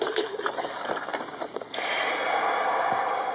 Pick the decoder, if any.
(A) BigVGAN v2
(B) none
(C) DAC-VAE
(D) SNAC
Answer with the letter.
A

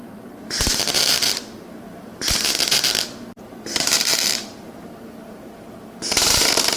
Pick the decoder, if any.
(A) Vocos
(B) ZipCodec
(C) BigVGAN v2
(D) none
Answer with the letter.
C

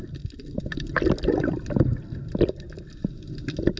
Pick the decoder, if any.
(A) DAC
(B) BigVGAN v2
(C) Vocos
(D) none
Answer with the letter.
D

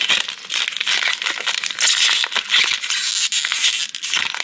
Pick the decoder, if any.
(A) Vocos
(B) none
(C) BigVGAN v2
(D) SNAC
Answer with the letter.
B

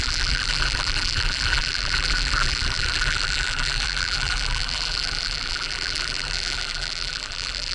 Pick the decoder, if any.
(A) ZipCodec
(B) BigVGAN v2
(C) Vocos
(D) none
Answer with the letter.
B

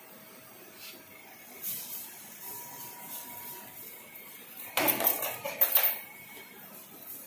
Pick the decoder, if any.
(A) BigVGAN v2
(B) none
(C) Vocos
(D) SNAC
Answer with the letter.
B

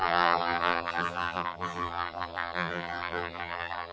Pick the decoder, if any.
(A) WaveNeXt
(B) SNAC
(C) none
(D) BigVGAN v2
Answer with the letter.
D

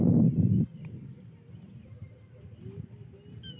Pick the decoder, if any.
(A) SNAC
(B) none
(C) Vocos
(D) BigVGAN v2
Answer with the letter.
B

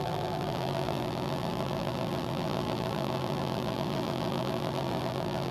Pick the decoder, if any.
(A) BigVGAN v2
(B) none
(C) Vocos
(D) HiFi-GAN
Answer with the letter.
A